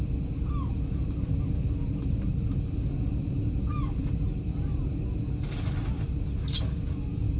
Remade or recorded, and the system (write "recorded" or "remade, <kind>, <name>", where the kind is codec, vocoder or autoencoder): recorded